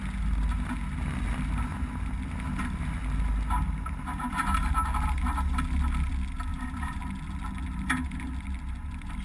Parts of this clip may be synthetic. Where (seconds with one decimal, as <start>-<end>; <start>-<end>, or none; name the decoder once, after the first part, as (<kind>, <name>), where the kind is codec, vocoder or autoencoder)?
6.5-7.0 (vocoder, BigVGAN v2)